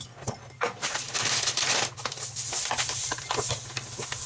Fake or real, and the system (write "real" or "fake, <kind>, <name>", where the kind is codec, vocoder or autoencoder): real